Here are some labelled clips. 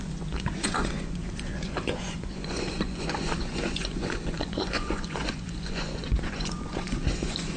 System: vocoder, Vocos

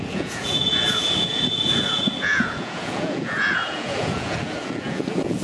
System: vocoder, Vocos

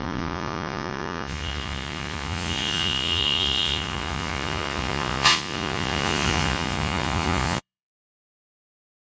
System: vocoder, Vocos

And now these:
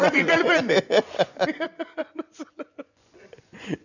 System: vocoder, Vocos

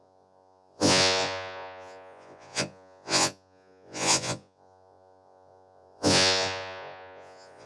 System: vocoder, Vocos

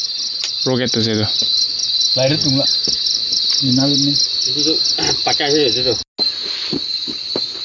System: none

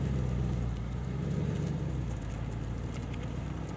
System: none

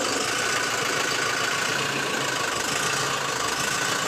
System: none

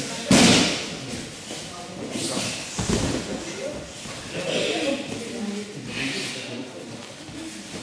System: none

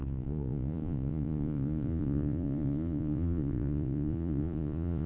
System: vocoder, Vocos